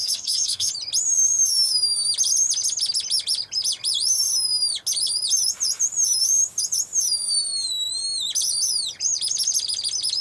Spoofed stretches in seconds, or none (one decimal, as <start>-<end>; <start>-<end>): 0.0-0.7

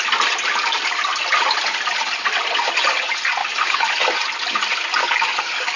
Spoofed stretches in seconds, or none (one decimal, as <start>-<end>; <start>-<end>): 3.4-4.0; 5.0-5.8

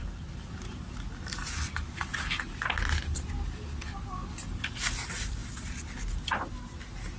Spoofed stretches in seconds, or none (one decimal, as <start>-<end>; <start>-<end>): none